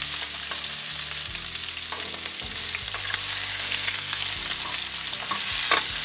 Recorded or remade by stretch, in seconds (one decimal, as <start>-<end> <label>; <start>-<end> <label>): 0.0-3.5 recorded; 3.5-4.2 remade; 4.2-6.0 recorded